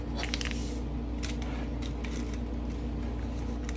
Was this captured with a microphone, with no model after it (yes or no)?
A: yes